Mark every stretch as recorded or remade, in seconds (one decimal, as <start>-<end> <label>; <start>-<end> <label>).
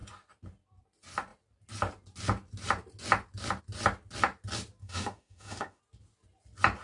0.0-4.8 recorded; 4.8-5.8 remade; 5.8-6.8 recorded